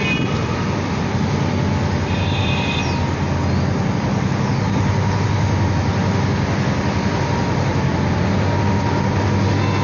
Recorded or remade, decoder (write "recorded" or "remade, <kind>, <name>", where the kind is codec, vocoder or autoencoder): recorded